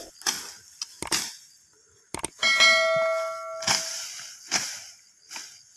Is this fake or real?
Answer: real